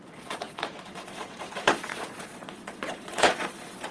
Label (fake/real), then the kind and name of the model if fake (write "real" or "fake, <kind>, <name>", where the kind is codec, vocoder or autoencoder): fake, vocoder, Vocos